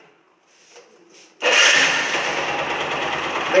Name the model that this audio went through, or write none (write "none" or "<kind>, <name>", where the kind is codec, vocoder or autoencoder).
none